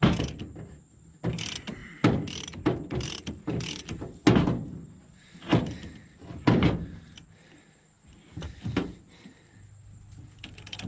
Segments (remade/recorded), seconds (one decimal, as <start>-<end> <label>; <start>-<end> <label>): 0.0-10.9 recorded